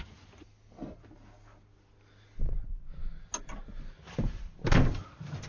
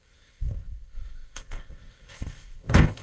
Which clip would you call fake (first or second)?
second